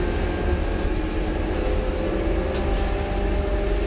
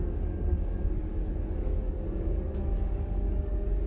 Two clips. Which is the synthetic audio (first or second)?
second